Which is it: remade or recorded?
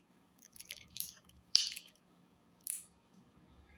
remade